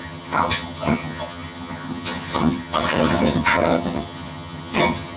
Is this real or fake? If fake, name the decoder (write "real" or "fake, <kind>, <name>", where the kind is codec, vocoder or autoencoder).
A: fake, vocoder, HiFi-GAN